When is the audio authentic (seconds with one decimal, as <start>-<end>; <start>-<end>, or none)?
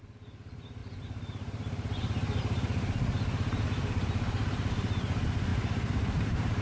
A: 0.0-0.8; 2.4-5.5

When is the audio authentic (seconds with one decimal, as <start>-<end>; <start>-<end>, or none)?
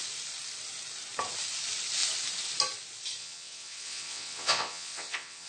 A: 0.0-3.2